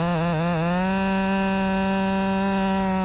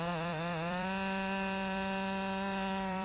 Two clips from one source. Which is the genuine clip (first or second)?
first